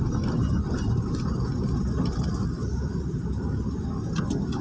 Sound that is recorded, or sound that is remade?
remade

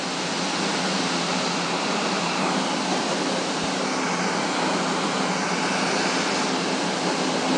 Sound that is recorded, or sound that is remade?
recorded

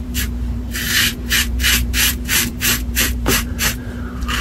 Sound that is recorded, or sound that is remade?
remade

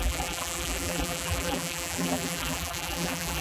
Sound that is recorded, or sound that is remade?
remade